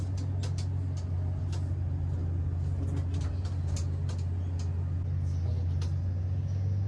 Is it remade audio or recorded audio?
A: recorded